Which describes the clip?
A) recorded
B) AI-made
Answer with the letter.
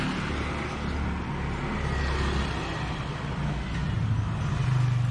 A